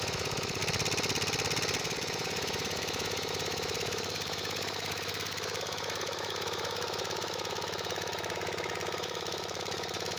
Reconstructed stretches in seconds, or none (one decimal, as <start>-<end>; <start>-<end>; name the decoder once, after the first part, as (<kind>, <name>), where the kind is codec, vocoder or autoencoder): 0.0-0.6 (autoencoder, DAC-VAE); 1.8-10.2

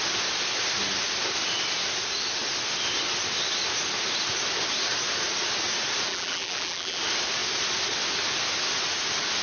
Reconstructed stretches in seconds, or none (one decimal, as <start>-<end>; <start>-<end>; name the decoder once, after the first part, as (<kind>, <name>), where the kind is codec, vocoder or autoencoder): 6.1-7.0 (vocoder, BigVGAN v2)